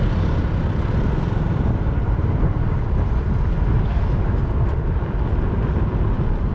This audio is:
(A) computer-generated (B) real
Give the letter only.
B